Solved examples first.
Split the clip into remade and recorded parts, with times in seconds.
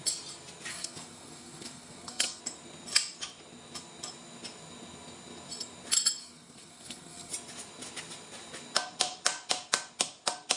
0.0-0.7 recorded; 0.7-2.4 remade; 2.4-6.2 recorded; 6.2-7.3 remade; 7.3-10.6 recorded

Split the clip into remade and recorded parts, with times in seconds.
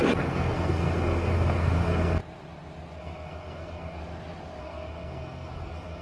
0.0-2.2 remade; 2.2-3.0 recorded; 3.0-4.0 remade; 4.0-4.6 recorded; 4.6-6.0 remade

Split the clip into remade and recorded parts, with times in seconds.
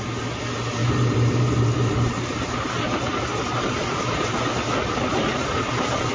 0.0-0.8 recorded; 0.8-4.3 remade; 4.3-5.3 recorded; 5.3-6.1 remade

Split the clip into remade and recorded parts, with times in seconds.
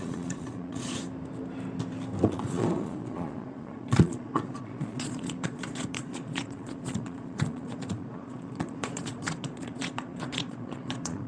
0.0-1.0 remade; 1.0-2.2 recorded; 2.2-11.3 remade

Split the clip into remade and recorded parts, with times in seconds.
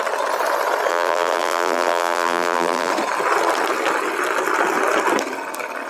0.0-0.9 recorded; 0.9-2.9 remade; 2.9-5.9 recorded